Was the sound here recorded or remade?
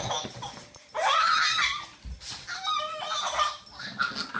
recorded